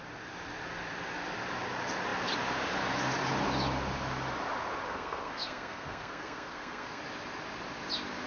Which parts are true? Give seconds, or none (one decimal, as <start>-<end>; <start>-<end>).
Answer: 0.0-4.9; 7.0-8.3